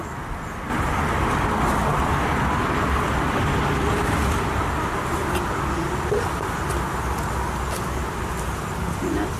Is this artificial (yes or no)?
no